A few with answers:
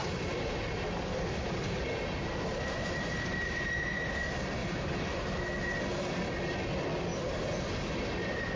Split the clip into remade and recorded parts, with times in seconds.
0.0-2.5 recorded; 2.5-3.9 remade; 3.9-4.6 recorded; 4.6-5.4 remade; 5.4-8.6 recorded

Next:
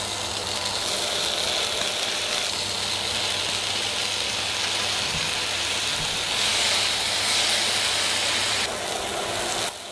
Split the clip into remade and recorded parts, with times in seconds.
0.0-9.9 recorded

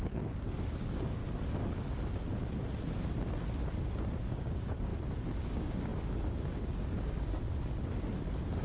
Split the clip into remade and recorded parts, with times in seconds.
0.0-1.2 remade; 1.2-4.3 recorded; 4.3-4.9 remade; 4.9-5.5 recorded; 5.5-7.4 remade; 7.4-8.6 recorded

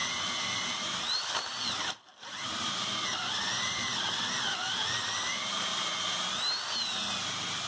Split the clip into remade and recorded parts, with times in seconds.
0.0-4.5 remade; 4.5-7.7 recorded

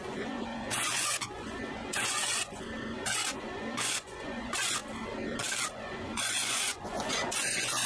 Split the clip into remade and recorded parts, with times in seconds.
0.0-4.8 remade; 4.8-5.7 recorded; 5.7-7.9 remade

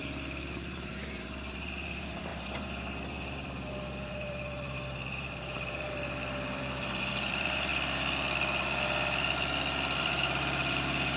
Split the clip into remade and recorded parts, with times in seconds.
0.0-7.7 remade; 7.7-10.0 recorded; 10.0-11.2 remade